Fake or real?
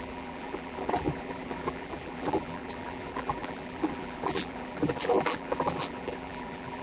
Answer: fake